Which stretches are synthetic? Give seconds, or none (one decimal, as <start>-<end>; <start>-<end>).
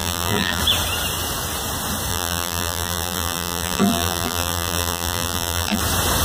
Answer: 0.0-0.6; 2.1-5.8